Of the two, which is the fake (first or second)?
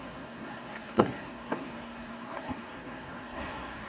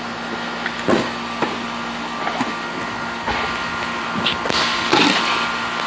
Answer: first